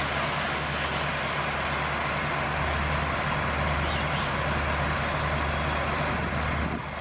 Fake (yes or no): no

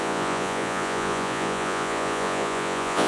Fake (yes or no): yes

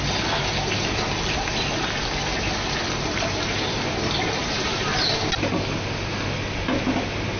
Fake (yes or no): no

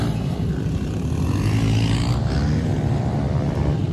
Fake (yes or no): no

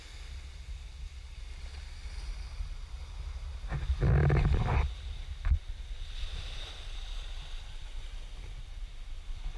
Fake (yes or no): no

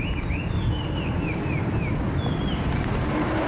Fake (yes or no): no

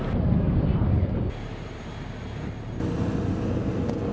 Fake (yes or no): no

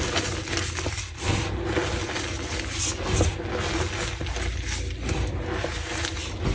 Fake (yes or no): no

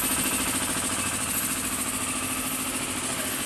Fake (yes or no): no